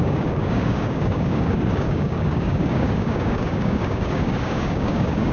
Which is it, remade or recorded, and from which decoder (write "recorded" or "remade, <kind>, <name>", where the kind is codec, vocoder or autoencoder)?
remade, codec, DAC